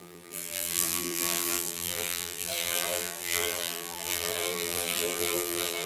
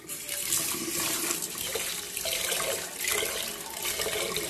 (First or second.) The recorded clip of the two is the second